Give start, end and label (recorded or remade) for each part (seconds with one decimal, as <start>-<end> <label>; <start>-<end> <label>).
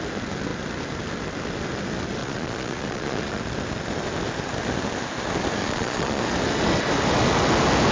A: 0.0-2.2 recorded; 2.2-3.4 remade; 3.4-5.6 recorded; 5.6-6.2 remade; 6.2-7.9 recorded